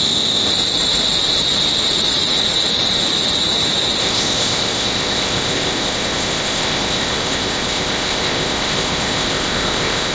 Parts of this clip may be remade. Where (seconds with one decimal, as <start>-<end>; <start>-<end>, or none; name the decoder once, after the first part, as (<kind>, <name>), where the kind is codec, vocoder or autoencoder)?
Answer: 0.0-0.5 (codec, ZipCodec); 4.0-10.1